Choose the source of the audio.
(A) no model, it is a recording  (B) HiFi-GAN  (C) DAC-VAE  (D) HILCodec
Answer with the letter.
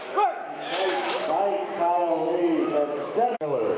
C